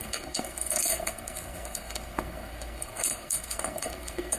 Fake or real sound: fake